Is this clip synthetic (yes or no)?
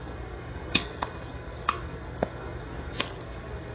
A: yes